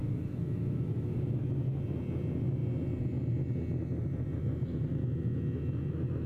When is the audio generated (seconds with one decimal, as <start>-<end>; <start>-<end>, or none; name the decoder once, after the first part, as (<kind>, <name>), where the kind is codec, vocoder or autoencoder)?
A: 0.0-1.4 (autoencoder, DAC-VAE)